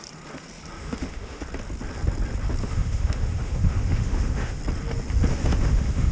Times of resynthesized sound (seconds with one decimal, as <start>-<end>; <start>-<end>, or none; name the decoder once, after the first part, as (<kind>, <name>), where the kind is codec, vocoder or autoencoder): 0.8-1.4 (autoencoder, DAC-VAE); 2.6-4.6; 5.3-6.1